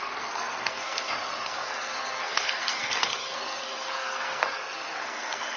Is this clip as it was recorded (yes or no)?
no